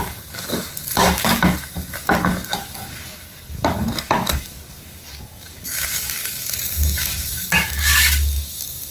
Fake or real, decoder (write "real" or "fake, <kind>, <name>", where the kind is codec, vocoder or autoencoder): fake, codec, DAC